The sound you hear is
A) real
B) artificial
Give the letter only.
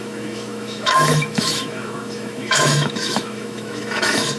B